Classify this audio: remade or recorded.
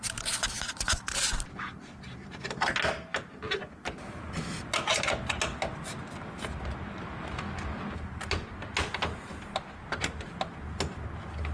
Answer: recorded